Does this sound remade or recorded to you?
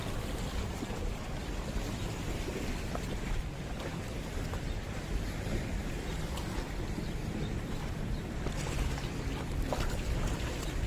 remade